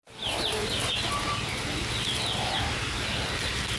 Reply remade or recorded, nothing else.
recorded